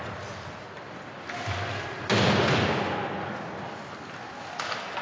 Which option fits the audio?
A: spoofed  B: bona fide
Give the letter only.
B